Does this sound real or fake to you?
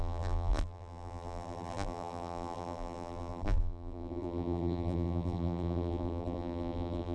fake